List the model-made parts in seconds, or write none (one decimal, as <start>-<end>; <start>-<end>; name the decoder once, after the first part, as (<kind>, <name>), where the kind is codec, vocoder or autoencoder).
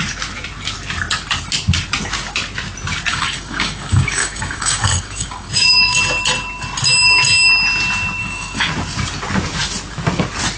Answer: 3.1-6.0 (codec, DAC); 8.2-8.7